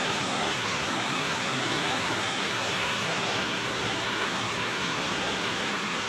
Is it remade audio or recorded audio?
remade